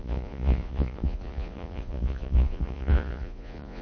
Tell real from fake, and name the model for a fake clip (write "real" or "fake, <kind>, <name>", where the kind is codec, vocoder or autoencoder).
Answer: fake, vocoder, Vocos